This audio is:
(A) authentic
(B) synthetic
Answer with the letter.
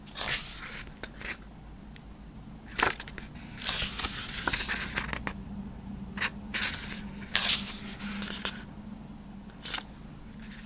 A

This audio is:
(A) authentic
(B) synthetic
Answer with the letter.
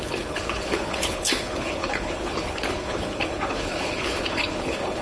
B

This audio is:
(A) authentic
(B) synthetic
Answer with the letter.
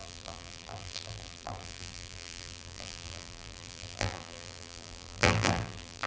B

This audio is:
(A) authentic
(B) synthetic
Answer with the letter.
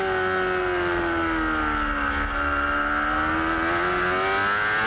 A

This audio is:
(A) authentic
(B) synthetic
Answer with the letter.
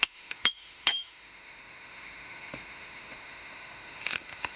B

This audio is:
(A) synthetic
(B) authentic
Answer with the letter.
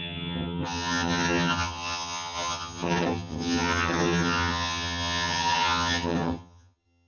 A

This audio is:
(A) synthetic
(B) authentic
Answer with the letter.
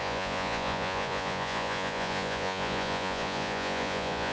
A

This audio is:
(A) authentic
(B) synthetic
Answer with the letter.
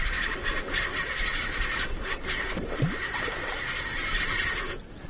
A